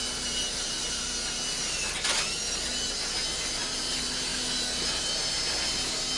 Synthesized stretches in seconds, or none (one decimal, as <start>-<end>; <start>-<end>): none